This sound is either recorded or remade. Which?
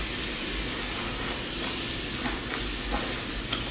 recorded